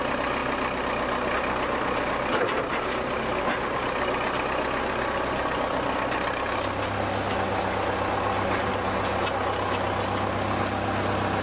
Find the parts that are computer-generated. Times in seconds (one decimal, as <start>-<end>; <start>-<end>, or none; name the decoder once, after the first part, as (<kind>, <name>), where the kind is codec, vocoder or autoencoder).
none